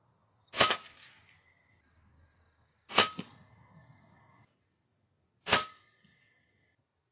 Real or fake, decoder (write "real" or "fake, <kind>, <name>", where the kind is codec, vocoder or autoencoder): real